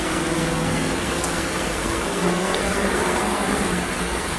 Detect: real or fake fake